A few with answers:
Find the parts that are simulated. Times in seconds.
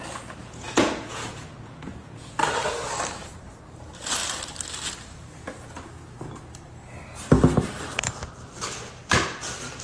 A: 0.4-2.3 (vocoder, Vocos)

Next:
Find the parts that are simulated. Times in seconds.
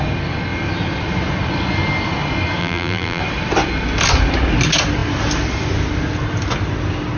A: 2.6-3.2 (vocoder, BigVGAN v2)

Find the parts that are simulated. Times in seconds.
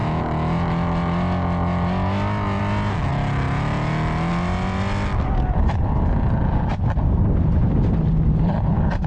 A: none